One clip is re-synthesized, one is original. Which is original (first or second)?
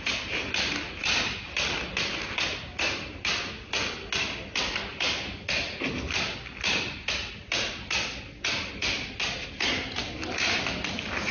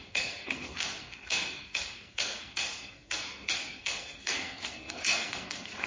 first